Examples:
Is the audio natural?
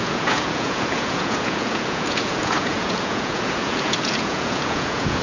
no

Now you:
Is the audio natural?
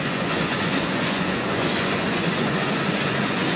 no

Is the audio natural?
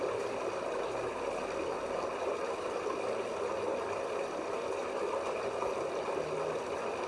yes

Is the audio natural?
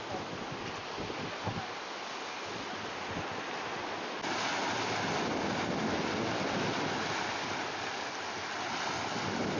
yes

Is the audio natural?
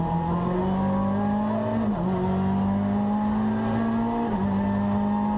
yes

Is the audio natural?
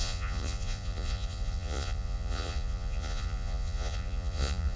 no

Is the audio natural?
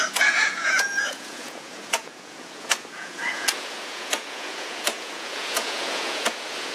no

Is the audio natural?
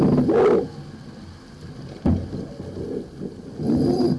yes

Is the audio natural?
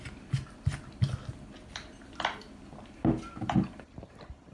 yes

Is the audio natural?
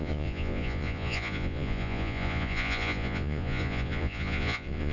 no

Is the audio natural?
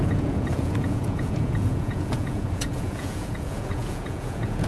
no